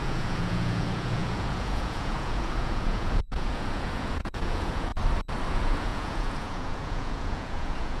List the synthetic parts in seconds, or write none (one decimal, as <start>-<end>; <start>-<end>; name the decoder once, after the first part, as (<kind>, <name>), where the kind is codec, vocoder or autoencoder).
0.0-4.9 (vocoder, Vocos); 5.5-8.0